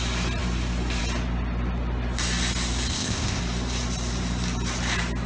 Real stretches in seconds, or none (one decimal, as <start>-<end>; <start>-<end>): 0.0-2.9; 3.4-5.3